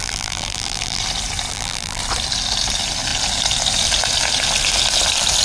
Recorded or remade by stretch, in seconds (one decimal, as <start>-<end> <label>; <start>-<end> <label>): 0.0-1.0 remade; 1.0-1.5 recorded; 1.5-2.0 remade; 2.0-5.4 recorded